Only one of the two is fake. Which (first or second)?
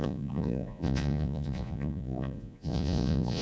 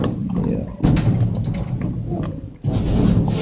first